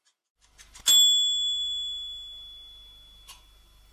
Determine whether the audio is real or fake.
real